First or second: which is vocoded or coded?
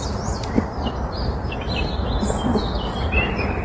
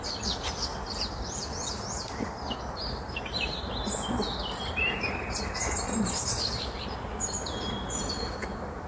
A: first